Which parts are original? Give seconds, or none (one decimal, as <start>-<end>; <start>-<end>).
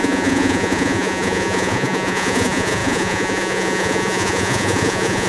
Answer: none